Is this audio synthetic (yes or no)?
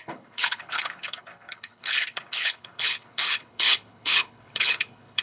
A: yes